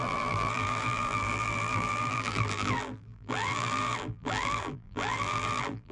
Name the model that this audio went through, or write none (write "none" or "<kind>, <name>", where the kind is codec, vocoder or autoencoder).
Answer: vocoder, BigVGAN v2